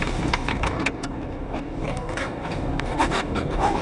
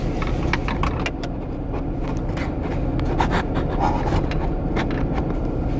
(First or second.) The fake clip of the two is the first